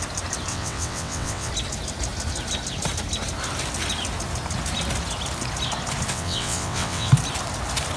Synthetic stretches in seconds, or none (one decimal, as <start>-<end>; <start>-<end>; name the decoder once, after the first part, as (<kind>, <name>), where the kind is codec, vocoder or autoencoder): 0.5-1.5 (vocoder, WaveNeXt); 6.1-7.1